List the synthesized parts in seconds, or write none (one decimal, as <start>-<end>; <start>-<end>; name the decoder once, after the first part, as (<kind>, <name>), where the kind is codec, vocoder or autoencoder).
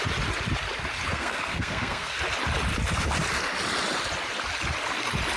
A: 1.1-2.2 (codec, SNAC)